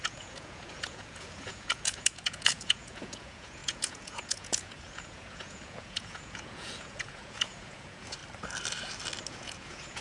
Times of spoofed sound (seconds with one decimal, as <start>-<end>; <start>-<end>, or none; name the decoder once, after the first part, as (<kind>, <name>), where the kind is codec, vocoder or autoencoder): 0.0-8.2 (vocoder, Vocos); 9.3-10.0